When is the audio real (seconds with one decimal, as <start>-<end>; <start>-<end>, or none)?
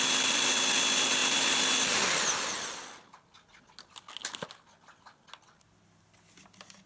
0.0-6.9